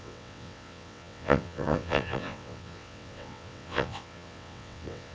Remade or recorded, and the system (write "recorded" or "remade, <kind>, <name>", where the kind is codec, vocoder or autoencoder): remade, vocoder, WaveNeXt